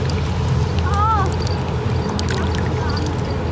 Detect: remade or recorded recorded